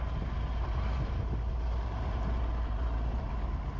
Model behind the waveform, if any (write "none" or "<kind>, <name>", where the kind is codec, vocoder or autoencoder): none